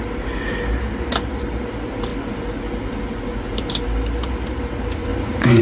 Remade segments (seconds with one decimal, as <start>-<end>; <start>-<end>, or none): 5.1-5.6